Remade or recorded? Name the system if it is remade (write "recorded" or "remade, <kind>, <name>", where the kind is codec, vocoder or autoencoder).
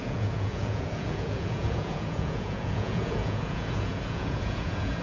remade, vocoder, Vocos